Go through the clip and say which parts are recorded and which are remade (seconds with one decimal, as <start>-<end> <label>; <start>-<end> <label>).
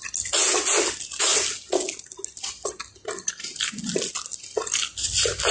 0.0-5.5 recorded